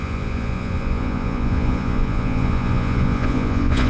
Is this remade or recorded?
remade